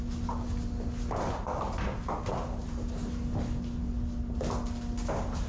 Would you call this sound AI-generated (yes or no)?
no